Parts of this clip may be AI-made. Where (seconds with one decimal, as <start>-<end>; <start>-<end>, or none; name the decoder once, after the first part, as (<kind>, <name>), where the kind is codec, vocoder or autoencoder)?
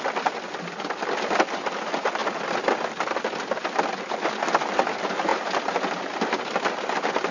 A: none